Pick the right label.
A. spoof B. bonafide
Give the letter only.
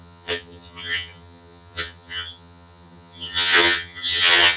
A